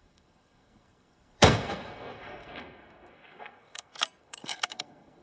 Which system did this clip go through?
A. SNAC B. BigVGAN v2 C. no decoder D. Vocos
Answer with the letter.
A